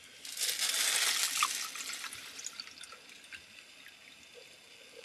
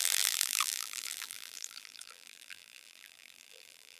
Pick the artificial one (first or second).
second